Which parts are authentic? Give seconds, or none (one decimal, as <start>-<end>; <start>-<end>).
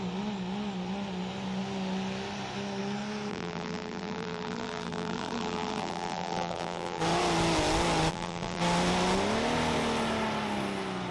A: 0.0-3.3; 7.0-8.1; 8.6-11.1